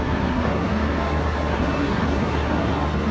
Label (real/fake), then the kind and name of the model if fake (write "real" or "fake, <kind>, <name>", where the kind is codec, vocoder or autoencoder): fake, codec, SNAC